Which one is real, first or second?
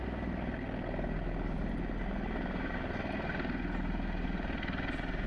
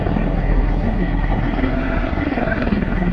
first